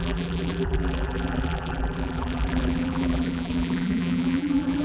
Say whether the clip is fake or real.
fake